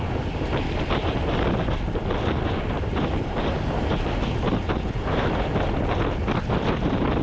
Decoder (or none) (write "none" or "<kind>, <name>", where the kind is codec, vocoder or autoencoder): none